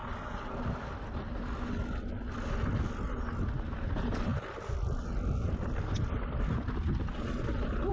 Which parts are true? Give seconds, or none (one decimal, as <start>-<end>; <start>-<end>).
0.0-7.9